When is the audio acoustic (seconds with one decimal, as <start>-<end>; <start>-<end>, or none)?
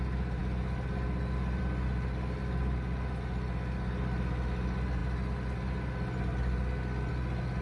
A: 0.0-7.6